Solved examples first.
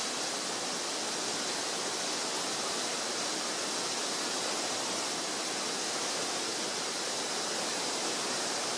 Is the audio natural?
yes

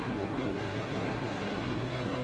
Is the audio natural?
no